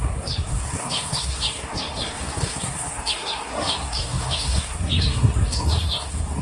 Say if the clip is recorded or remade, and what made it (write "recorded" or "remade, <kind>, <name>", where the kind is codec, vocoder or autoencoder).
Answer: remade, codec, SNAC